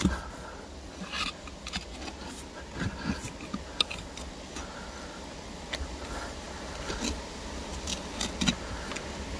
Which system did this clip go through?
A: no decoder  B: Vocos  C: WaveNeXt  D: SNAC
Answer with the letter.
A